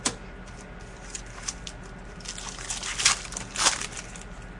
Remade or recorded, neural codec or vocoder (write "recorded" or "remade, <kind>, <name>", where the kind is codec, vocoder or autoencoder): recorded